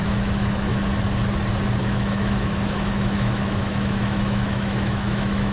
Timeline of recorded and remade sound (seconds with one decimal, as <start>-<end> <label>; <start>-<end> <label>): 0.0-0.7 remade; 0.7-1.8 recorded; 1.8-5.5 remade

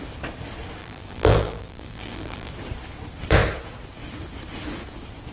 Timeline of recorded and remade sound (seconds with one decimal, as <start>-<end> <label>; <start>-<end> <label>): 0.0-0.8 recorded; 0.8-2.5 remade; 2.5-5.3 recorded

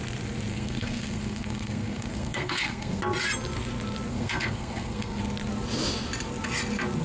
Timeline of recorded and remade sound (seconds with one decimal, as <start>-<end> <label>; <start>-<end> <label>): 0.0-0.5 recorded; 0.5-3.0 remade; 3.0-4.1 recorded; 4.1-5.2 remade; 5.2-7.0 recorded

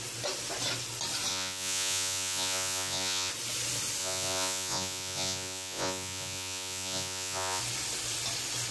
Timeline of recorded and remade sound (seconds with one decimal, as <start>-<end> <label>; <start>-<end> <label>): 0.0-1.3 recorded; 1.3-3.3 remade; 3.3-4.0 recorded; 4.0-7.6 remade; 7.6-8.7 recorded

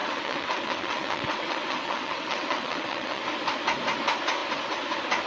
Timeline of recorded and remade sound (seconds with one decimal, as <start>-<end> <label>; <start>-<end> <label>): 0.0-3.2 remade; 3.2-5.3 recorded

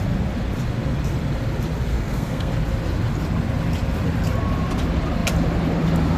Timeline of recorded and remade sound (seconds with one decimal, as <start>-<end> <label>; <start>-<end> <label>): 0.0-1.9 recorded; 1.9-2.5 remade; 2.5-6.2 recorded

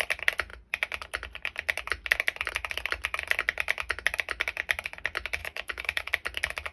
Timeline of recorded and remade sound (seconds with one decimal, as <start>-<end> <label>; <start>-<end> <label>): 0.0-5.4 recorded; 5.4-6.1 remade; 6.1-6.7 recorded